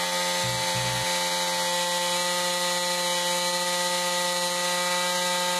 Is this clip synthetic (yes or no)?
no